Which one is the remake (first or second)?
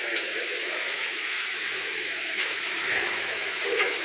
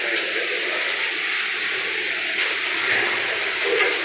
first